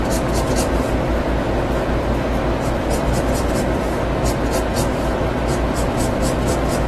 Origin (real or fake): real